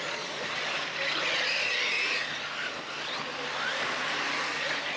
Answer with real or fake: real